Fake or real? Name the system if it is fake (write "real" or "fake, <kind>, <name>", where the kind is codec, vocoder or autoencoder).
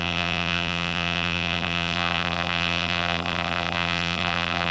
fake, vocoder, BigVGAN v2